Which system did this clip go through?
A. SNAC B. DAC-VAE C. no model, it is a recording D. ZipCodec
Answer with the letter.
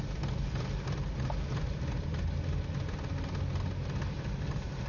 C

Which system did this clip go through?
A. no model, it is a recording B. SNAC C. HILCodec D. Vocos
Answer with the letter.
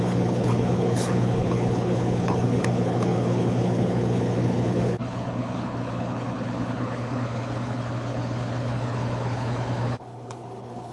C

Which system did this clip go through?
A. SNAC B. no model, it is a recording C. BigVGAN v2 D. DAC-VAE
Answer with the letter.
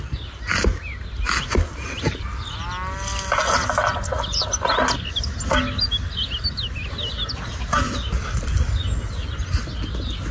B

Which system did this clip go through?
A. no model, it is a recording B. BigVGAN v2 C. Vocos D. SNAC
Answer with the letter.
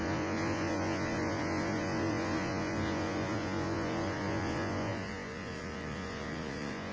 C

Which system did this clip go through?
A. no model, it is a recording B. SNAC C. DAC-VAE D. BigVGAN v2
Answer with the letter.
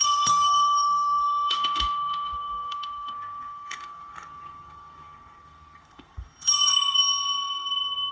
B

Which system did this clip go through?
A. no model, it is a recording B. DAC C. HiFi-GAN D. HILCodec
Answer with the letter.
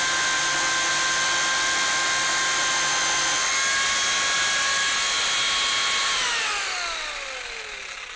A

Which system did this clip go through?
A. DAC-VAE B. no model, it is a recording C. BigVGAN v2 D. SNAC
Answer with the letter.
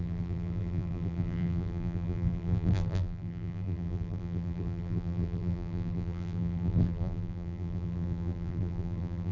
C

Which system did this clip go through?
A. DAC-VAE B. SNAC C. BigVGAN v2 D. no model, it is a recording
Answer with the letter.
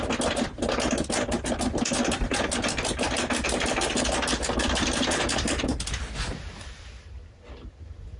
D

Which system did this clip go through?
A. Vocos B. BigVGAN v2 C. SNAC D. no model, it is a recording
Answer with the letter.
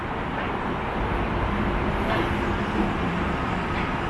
D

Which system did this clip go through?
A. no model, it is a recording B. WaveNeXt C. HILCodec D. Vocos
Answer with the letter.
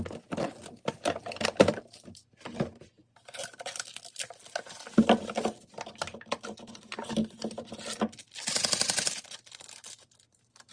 A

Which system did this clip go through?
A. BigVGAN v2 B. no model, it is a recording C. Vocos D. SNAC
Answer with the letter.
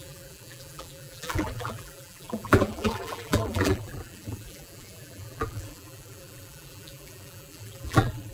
A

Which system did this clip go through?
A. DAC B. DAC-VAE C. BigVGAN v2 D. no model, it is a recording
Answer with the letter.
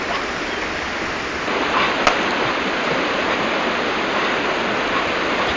D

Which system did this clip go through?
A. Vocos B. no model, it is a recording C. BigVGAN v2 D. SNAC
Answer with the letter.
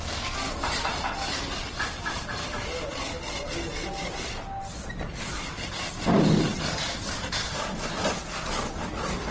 B